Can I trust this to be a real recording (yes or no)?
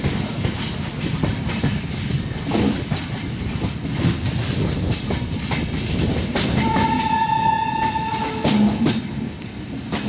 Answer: yes